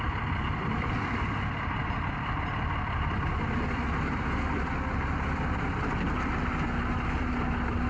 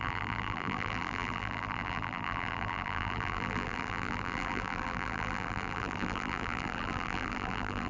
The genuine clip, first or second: first